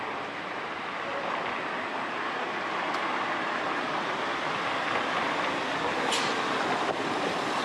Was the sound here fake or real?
real